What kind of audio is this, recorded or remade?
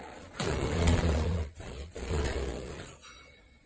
remade